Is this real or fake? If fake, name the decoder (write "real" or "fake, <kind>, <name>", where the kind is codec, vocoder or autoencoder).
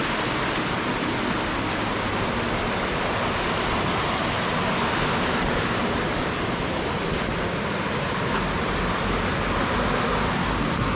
real